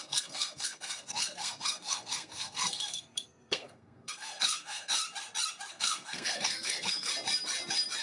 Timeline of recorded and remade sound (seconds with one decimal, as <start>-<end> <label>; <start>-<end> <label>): 0.0-5.0 remade; 5.0-5.7 recorded; 5.7-7.1 remade; 7.1-8.0 recorded